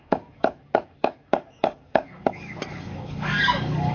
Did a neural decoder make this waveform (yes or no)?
yes